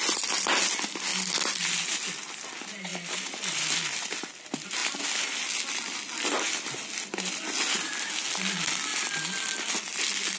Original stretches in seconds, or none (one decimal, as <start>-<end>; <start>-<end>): 0.0-10.4